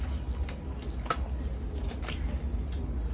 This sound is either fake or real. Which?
real